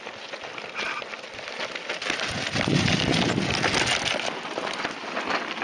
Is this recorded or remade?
recorded